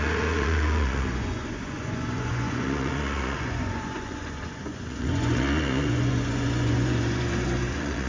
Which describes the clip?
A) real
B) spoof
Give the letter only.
B